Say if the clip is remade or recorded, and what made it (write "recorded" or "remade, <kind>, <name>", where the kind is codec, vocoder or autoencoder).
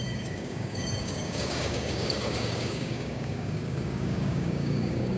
remade, codec, DAC